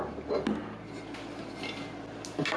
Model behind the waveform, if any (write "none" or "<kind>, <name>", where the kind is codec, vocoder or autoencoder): none